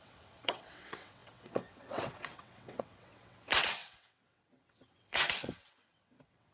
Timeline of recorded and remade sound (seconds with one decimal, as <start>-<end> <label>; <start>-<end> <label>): 0.0-6.5 remade